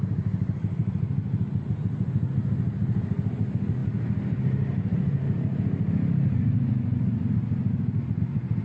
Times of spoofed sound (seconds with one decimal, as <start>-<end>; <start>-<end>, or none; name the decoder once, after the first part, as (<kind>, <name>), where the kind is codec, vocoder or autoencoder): none